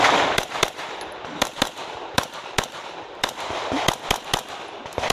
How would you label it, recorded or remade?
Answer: remade